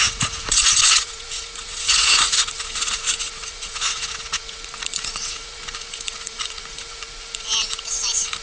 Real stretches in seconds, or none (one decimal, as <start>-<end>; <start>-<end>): 0.4-1.0